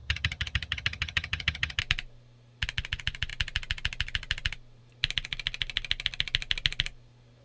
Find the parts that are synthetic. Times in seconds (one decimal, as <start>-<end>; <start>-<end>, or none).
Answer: 0.0-1.8